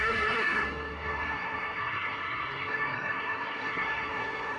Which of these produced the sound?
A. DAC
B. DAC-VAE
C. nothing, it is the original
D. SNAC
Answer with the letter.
D